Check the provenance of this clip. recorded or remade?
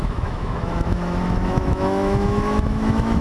remade